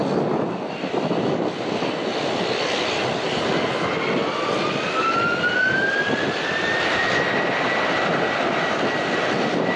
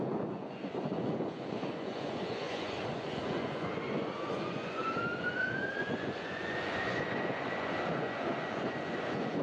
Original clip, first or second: first